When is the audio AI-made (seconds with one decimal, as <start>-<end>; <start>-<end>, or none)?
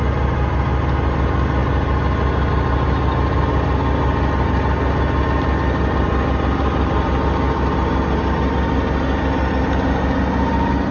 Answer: none